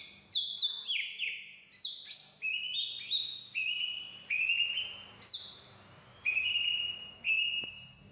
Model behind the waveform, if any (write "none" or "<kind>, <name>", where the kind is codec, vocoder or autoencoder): none